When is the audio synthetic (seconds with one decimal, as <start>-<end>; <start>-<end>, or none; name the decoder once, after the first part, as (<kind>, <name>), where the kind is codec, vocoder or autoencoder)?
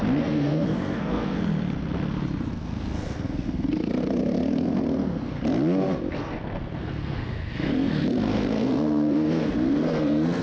0.0-1.4 (codec, SNAC); 2.5-5.4; 6.2-10.4